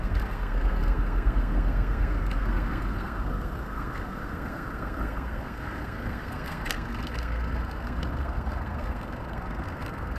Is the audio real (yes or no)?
no